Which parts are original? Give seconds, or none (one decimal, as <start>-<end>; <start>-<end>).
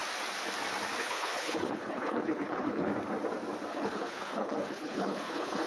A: 0.0-1.0; 2.9-3.7